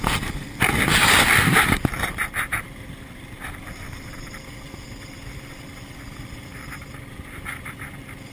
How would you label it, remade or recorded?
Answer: remade